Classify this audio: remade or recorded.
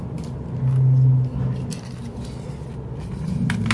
recorded